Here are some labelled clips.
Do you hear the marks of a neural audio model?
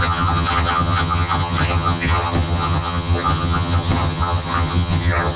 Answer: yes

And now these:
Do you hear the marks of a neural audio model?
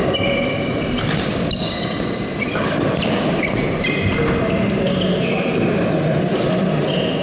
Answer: no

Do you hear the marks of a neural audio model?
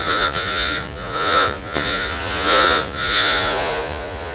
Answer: yes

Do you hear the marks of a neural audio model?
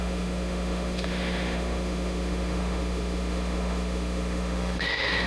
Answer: yes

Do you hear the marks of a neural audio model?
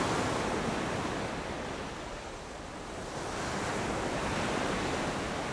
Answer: no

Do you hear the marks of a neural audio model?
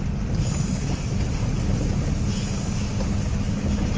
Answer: no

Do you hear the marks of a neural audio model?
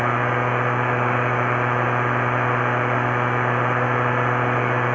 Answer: no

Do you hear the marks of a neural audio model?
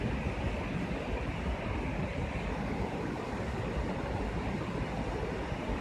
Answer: no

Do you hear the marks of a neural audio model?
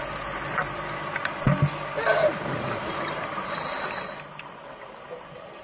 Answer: no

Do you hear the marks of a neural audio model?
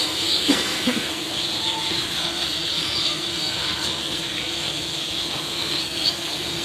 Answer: yes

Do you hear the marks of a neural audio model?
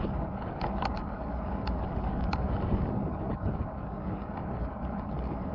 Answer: yes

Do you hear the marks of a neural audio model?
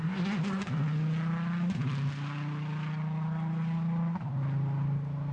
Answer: no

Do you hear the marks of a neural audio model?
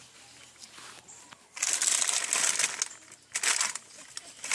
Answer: no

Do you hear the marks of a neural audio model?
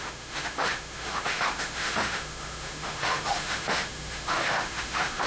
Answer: yes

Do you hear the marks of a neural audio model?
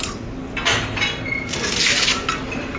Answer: no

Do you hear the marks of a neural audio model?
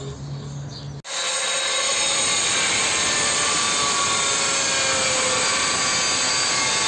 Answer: no